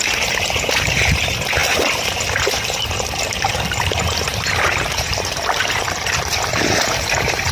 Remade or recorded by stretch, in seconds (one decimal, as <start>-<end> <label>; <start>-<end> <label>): 0.0-7.5 remade